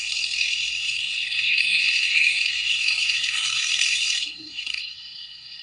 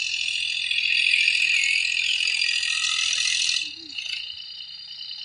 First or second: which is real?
second